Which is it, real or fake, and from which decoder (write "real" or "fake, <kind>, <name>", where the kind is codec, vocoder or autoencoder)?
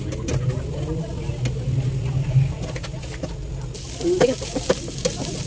real